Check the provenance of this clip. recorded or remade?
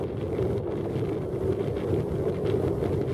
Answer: recorded